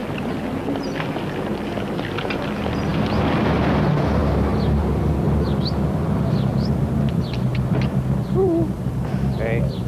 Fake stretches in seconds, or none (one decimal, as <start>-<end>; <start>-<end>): none